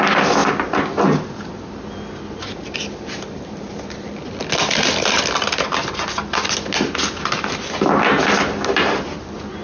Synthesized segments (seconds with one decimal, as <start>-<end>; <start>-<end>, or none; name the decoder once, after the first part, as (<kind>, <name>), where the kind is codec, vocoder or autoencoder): none